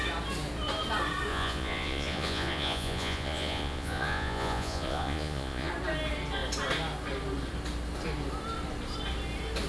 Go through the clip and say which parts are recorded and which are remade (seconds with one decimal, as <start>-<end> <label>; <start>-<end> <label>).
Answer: 0.0-1.3 recorded; 1.3-5.7 remade; 5.7-9.7 recorded